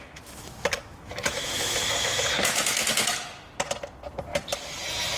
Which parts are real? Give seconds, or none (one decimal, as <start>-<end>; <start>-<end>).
3.1-5.2